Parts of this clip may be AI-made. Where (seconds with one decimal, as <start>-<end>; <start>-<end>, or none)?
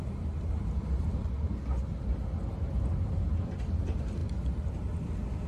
none